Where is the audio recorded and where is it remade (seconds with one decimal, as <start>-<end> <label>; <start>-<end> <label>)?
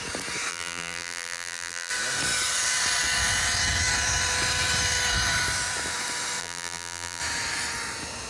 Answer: 0.0-0.5 recorded; 0.5-1.9 remade; 1.9-6.4 recorded; 6.4-7.2 remade; 7.2-8.3 recorded